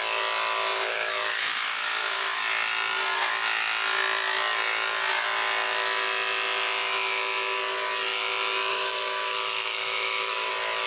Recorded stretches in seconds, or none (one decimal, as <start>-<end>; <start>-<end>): 0.0-0.9; 2.4-8.7; 10.5-10.9